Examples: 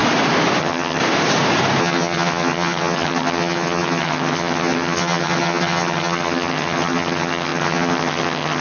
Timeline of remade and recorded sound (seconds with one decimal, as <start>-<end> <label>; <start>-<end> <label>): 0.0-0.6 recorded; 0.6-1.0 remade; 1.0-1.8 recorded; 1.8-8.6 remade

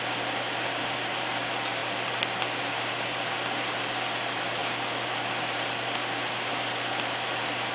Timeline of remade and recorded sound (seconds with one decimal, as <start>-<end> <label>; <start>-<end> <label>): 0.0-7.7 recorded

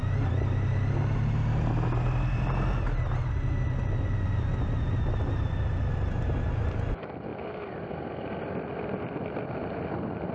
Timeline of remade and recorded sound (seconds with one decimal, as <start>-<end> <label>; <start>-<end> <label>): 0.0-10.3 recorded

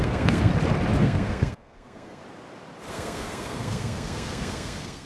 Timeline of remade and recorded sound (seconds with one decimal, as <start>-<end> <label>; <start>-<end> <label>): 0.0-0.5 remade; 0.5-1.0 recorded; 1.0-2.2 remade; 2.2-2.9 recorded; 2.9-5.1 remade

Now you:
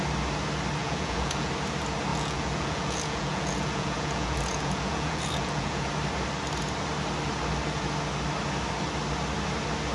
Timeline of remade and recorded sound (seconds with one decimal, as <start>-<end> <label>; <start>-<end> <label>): 0.0-0.8 recorded; 0.8-1.5 remade; 1.5-2.1 recorded; 2.1-5.9 remade; 5.9-9.9 recorded